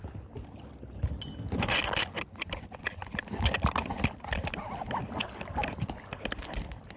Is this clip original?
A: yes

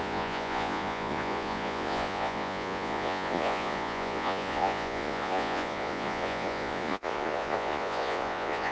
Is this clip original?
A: no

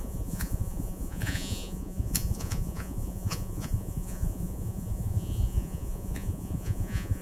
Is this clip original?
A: no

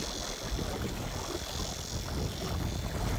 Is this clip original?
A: yes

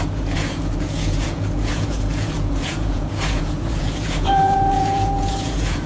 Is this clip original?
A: no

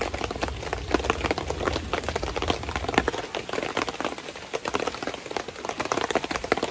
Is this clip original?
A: yes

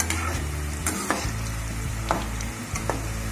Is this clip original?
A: yes